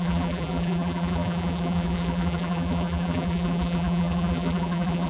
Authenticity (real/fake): fake